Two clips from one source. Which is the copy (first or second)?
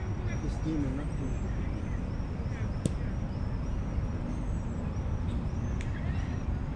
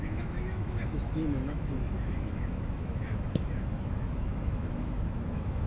second